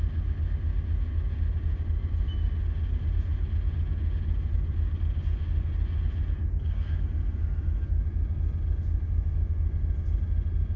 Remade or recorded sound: recorded